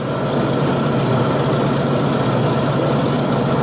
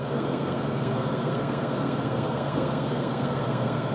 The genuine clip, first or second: first